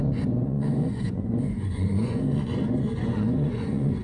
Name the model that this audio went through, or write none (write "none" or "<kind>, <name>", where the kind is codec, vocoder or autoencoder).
vocoder, Vocos